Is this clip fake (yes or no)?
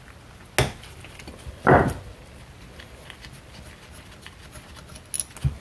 no